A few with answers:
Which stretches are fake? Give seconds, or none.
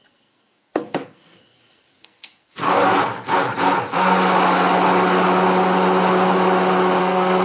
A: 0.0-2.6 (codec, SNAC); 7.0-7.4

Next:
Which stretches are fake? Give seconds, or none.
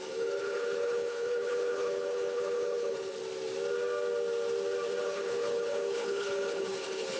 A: 0.0-3.2 (codec, HILCodec); 5.0-7.2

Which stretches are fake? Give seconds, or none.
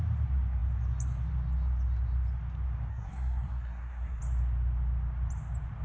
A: 2.9-4.2 (codec, SNAC)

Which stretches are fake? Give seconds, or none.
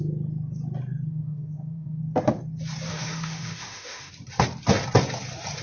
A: 1.1-2.0 (autoencoder, DAC-VAE); 2.9-4.1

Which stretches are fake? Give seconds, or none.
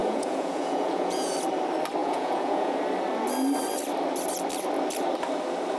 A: 0.0-1.3 (vocoder, Vocos); 2.0-2.8